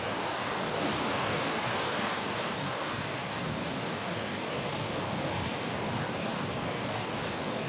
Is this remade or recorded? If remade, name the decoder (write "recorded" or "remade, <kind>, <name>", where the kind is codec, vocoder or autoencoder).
remade, codec, DAC